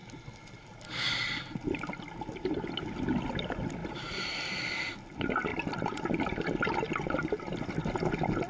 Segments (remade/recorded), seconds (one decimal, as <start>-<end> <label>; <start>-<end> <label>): 0.0-8.5 recorded

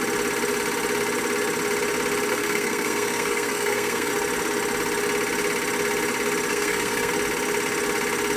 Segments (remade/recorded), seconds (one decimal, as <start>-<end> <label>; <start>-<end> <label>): 0.0-2.3 recorded; 2.3-4.1 remade; 4.1-6.5 recorded; 6.5-7.1 remade; 7.1-8.4 recorded

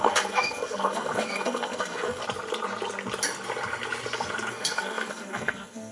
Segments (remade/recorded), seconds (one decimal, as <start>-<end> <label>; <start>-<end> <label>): 0.0-2.2 remade; 2.2-4.5 recorded; 4.5-5.9 remade

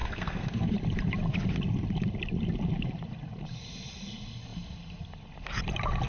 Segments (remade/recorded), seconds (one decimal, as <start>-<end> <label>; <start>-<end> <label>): 0.0-0.7 remade; 0.7-6.1 recorded

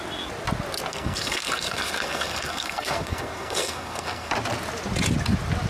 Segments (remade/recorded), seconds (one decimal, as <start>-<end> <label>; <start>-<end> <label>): 0.0-0.9 recorded; 0.9-4.3 remade; 4.3-5.7 recorded

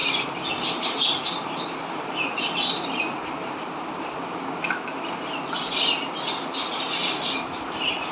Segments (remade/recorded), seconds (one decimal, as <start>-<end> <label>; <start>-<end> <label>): 0.0-8.1 recorded

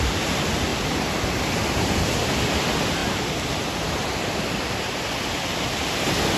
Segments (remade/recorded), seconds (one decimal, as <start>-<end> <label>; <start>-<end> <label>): 0.0-6.4 recorded

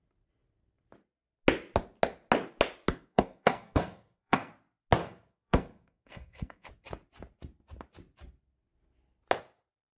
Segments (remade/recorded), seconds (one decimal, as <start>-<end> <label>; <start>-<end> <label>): 0.0-2.9 recorded; 2.9-4.5 remade; 4.5-5.0 recorded; 5.0-6.7 remade; 6.7-10.0 recorded